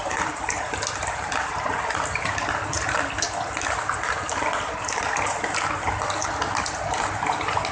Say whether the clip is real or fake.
real